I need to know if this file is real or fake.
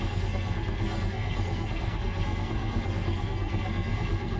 fake